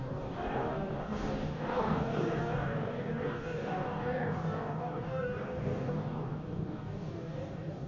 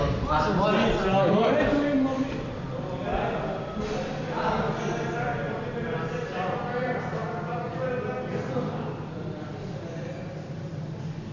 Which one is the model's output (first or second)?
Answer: first